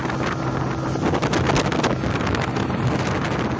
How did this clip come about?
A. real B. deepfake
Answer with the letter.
A